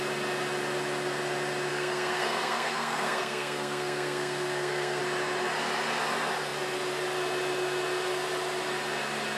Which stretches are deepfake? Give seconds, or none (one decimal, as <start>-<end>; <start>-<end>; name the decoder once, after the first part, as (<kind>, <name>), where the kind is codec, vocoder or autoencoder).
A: 1.7-5.0 (codec, SNAC)